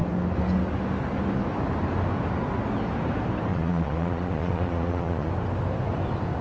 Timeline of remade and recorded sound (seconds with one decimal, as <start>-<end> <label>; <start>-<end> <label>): 0.0-3.5 recorded; 3.5-5.3 remade; 5.3-6.4 recorded